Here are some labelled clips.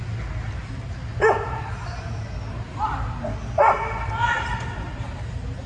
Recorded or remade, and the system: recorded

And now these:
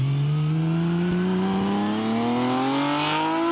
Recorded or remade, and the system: recorded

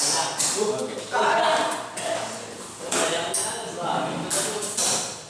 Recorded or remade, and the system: recorded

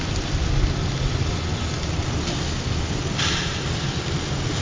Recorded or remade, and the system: recorded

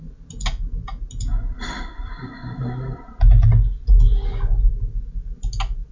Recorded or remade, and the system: recorded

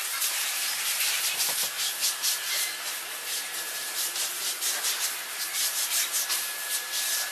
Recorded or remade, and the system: remade, vocoder, BigVGAN v2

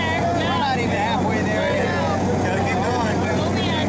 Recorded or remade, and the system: recorded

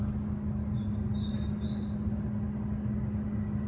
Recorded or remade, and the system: recorded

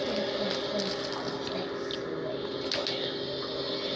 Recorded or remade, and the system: recorded